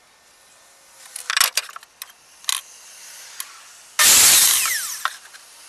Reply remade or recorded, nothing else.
recorded